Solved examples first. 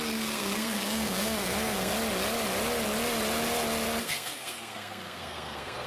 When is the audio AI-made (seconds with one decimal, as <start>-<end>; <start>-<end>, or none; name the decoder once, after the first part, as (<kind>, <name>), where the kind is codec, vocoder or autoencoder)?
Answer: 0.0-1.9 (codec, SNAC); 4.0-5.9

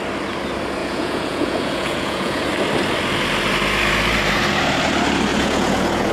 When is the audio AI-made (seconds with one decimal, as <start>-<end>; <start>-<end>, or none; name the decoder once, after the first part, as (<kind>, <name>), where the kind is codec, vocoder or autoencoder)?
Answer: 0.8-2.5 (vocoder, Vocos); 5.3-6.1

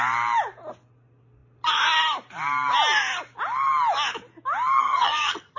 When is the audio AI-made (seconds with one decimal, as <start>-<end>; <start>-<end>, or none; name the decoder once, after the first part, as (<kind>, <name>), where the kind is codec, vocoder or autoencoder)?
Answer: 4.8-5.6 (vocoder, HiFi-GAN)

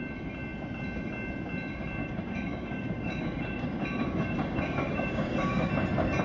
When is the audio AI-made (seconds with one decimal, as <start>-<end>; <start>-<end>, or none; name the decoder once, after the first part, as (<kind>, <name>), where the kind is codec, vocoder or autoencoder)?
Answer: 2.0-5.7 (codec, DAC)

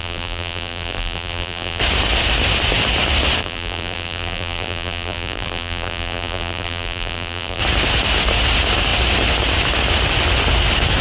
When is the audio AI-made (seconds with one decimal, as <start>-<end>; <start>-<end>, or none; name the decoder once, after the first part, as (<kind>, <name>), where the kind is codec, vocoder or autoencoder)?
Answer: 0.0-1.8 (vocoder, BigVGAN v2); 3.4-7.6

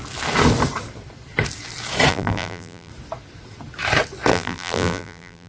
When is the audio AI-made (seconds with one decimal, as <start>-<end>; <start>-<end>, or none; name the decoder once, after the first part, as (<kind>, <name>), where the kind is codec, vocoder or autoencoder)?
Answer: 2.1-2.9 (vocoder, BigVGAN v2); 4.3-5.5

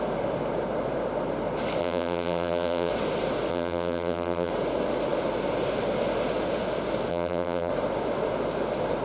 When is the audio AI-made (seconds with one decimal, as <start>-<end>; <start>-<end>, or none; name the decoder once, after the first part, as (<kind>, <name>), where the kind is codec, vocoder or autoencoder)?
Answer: 1.8-2.9 (vocoder, BigVGAN v2); 3.5-4.5; 7.1-7.7